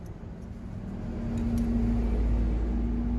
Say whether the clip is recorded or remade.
recorded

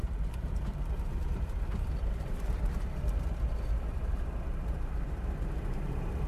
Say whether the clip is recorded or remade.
remade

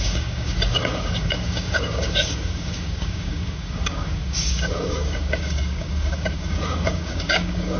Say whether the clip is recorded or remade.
remade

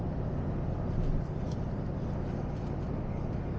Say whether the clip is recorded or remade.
remade